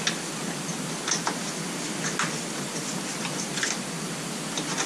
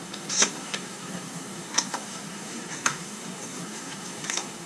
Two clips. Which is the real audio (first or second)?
first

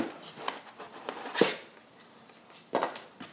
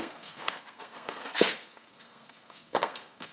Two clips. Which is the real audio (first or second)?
first